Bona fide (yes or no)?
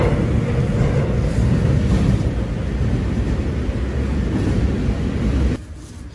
yes